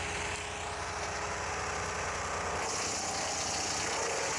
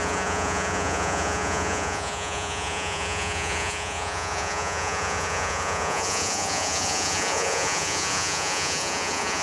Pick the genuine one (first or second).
first